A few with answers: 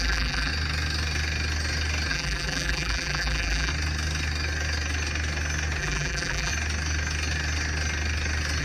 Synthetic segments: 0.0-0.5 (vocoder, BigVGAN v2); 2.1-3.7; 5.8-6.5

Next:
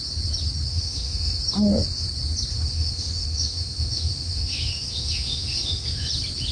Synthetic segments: 0.7-1.4 (autoencoder, DAC-VAE); 2.5-6.1

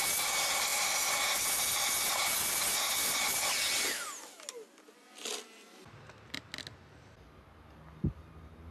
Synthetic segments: none

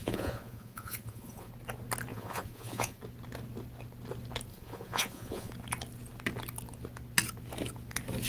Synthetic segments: 0.0-1.5 (vocoder, Vocos); 2.1-3.0; 4.5-5.5

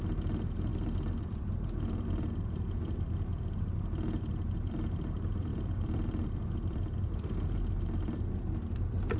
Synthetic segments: 5.5-7.5 (vocoder, BigVGAN v2)